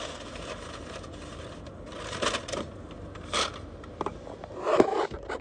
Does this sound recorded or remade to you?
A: recorded